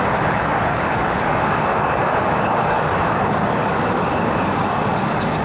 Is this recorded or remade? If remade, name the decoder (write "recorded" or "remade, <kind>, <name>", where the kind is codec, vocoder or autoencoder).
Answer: remade, codec, DAC